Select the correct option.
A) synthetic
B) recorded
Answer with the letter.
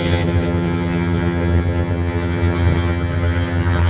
A